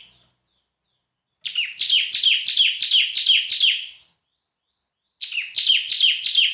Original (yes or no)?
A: yes